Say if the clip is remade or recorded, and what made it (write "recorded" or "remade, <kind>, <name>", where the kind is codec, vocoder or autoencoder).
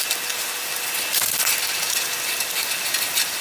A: recorded